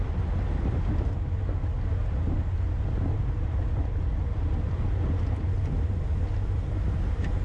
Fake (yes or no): no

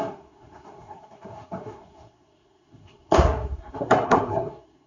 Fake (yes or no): yes